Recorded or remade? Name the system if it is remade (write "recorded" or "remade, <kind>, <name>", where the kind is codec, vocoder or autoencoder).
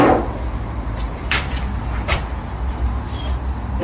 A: recorded